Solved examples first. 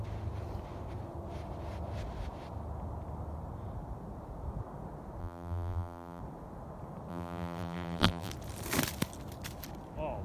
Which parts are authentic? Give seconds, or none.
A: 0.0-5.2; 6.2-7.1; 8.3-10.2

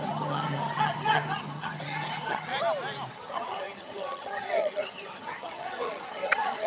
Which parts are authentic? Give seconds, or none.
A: 2.5-3.1

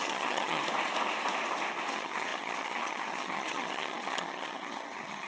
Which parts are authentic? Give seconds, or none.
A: 0.6-1.9

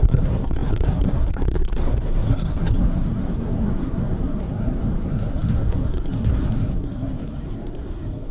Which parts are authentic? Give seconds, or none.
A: none

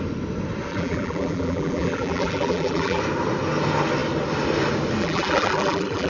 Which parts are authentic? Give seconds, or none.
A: 0.0-0.7; 3.0-5.0

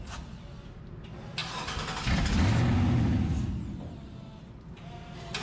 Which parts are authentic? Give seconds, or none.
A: 0.0-5.4

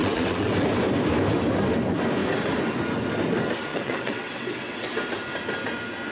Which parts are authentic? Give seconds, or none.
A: 0.5-3.7; 5.0-6.1

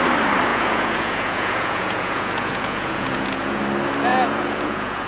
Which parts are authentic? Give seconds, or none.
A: 0.0-0.5; 3.6-4.1